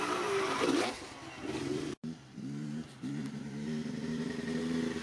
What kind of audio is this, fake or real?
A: fake